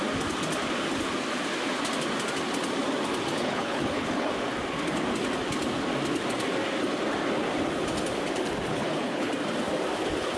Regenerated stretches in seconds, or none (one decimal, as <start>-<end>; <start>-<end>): 3.4-4.3; 8.7-9.3